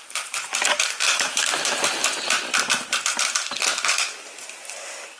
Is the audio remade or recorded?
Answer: recorded